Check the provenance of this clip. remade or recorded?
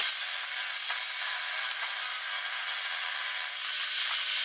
recorded